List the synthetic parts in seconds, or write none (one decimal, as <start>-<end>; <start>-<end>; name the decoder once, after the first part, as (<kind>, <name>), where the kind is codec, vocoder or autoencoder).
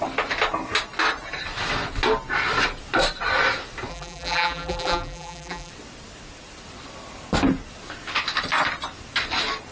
3.9-5.7 (vocoder, BigVGAN v2)